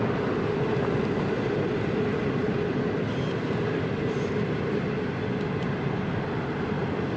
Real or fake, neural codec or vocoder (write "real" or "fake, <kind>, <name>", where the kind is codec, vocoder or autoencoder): real